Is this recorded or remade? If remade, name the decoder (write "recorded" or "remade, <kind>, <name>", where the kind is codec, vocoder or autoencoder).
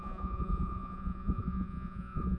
remade, vocoder, Vocos